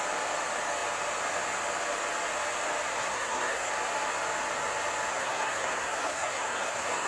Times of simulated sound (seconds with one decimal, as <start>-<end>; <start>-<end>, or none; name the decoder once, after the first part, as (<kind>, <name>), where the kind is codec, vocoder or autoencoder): 3.0-3.7 (codec, SNAC); 5.1-7.1